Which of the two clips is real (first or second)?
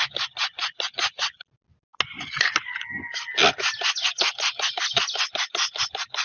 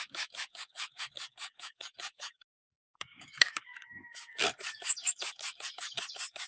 first